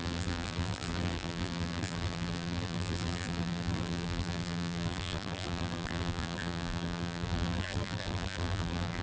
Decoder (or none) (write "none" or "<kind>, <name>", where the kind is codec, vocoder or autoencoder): vocoder, BigVGAN v2